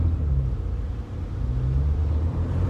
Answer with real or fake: real